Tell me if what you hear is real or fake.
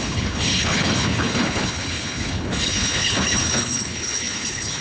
fake